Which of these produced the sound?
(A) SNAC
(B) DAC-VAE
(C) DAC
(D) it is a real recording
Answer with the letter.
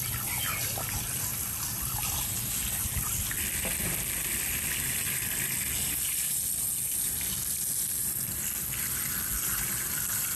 D